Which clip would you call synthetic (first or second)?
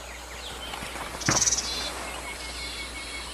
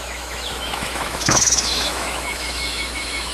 second